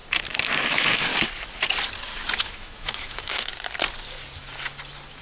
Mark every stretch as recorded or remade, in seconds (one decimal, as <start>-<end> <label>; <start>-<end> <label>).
0.0-0.7 recorded; 0.7-1.1 remade; 1.1-2.4 recorded; 2.4-3.5 remade; 3.5-5.2 recorded